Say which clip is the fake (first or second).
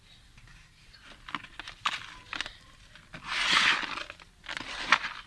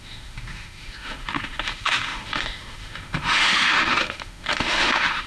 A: second